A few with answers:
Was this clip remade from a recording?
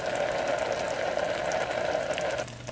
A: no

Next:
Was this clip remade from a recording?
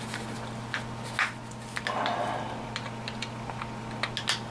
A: no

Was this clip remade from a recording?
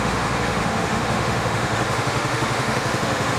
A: yes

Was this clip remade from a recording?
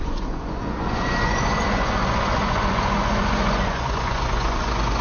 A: yes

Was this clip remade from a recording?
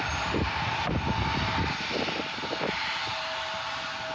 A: no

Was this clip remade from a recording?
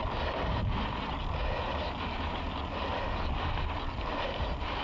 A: no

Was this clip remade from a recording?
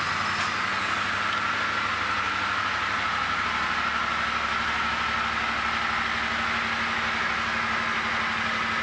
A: no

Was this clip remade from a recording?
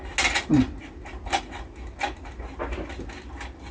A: no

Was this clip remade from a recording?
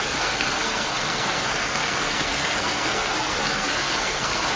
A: yes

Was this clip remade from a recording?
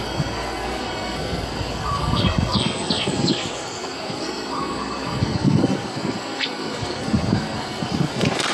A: yes